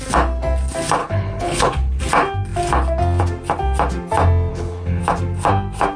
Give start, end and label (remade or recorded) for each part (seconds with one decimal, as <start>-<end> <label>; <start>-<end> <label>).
0.0-1.0 recorded; 1.0-2.0 remade; 2.0-4.5 recorded; 4.5-5.0 remade; 5.0-6.0 recorded